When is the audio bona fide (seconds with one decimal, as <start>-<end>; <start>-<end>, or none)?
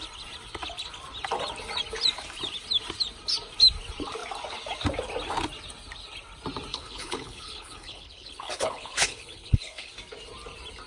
0.0-6.7; 9.9-10.9